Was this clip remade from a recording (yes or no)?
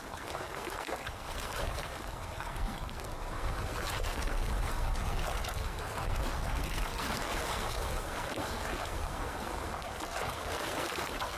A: yes